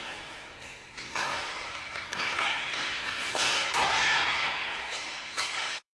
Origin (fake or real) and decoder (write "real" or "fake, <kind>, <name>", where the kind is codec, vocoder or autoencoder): fake, codec, SNAC